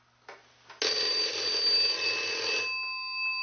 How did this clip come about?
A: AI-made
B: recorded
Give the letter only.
B